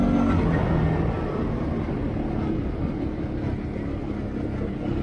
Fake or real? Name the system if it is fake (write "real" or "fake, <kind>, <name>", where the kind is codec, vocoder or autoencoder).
real